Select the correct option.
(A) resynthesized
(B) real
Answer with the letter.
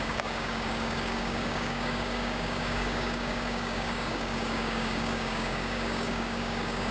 A